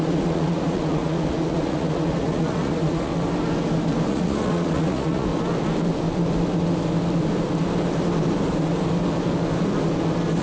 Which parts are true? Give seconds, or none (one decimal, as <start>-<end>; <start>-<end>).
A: 3.1-4.1; 5.3-10.4